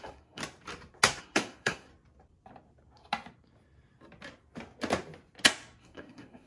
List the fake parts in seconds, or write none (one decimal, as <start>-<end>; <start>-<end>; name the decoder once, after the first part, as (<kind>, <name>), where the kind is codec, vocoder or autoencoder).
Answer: 0.0-0.4 (codec, SNAC); 1.2-1.9; 5.8-6.5